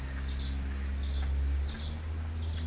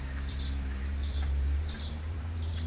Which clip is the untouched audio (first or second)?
first